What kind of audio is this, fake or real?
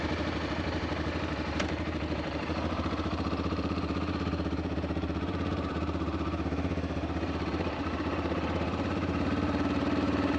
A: fake